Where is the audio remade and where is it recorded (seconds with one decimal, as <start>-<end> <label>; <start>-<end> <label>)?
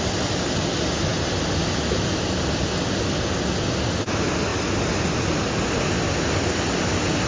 0.0-7.3 recorded